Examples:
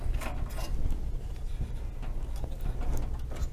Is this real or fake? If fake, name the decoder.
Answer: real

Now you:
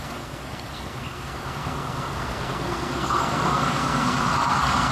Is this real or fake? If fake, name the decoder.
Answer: fake, codec, SNAC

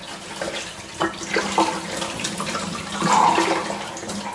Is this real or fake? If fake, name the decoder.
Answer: real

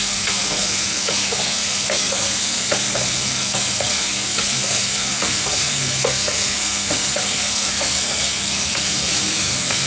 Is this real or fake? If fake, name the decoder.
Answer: fake, codec, SNAC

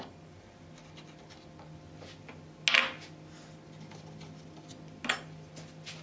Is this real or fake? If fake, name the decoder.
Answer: real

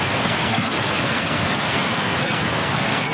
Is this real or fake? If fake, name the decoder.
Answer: fake, codec, SNAC